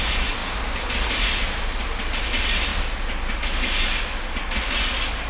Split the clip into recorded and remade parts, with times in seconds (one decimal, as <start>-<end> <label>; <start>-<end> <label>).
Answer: 0.0-5.3 recorded